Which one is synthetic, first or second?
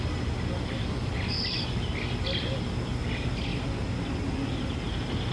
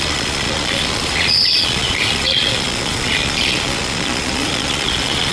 second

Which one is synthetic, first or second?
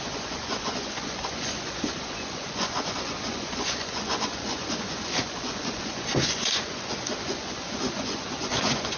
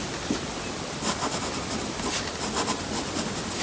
first